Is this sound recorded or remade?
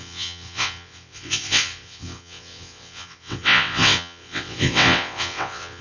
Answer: remade